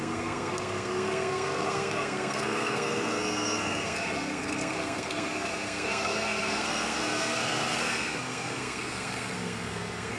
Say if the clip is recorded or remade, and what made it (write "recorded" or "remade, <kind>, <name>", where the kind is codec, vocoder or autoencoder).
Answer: remade, codec, SNAC